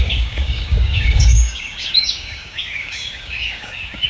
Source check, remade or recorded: remade